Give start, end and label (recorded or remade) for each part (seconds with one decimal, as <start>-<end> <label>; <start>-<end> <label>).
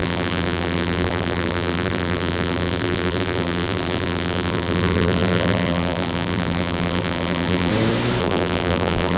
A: 0.0-7.7 remade; 7.7-8.2 recorded; 8.2-9.2 remade